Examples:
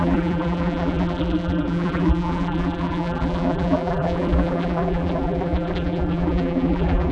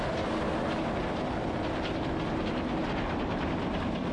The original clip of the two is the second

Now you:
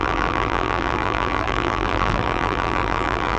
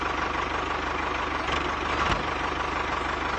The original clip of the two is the second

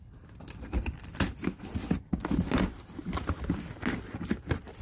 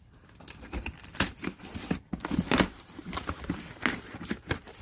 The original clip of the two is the first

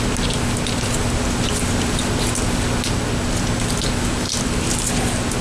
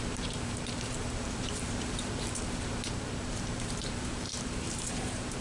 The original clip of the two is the first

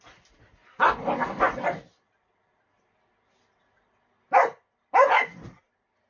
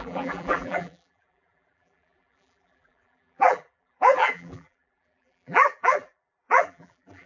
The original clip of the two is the first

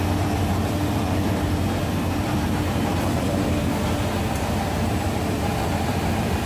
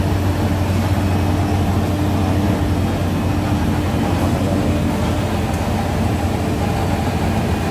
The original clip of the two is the second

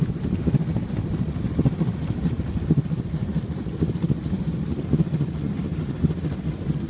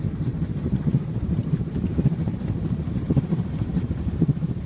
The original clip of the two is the first